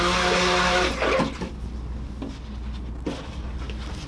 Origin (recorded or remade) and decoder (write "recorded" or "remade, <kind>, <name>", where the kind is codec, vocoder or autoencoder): recorded